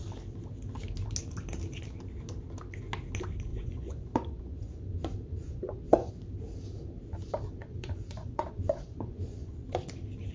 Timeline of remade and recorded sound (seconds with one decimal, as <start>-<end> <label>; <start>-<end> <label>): 0.0-3.5 recorded; 3.5-6.1 remade; 6.1-7.6 recorded; 7.6-9.6 remade; 9.6-10.3 recorded